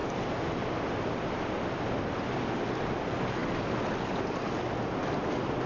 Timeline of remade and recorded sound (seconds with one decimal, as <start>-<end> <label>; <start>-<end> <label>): 0.0-5.7 recorded